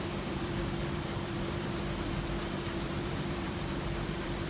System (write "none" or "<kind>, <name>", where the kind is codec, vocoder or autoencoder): vocoder, BigVGAN v2